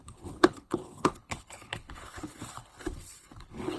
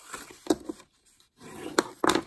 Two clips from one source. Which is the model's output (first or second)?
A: first